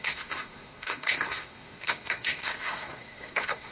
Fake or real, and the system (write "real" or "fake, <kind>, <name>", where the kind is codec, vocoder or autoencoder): fake, codec, SNAC